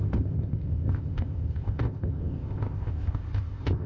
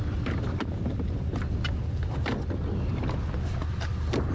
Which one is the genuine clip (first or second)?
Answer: second